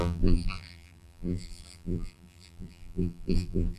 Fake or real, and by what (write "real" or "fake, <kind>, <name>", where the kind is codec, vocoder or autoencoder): fake, vocoder, BigVGAN v2